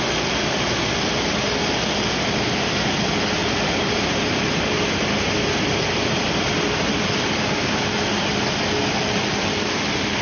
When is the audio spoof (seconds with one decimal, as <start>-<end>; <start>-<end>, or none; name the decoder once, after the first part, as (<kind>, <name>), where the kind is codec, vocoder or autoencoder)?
3.4-4.8 (vocoder, BigVGAN v2)